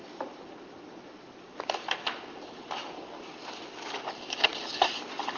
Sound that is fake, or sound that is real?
real